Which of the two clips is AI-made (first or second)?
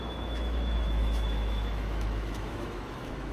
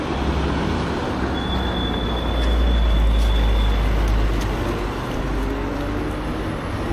first